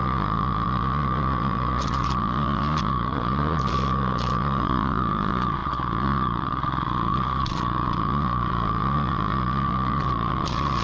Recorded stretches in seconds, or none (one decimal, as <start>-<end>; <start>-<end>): none